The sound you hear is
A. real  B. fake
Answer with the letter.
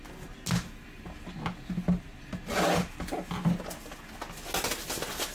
A